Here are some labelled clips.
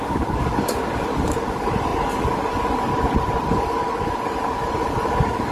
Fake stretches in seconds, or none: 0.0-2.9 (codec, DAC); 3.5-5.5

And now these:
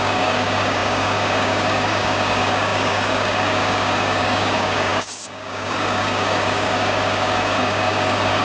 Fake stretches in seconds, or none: 0.0-8.4 (codec, DAC)

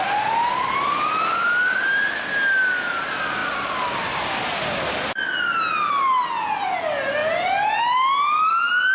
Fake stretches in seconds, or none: none

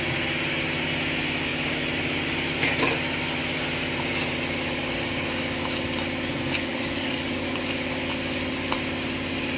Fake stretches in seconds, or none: 6.7-7.6 (codec, DAC)